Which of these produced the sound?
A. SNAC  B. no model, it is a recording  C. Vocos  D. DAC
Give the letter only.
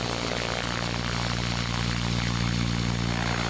B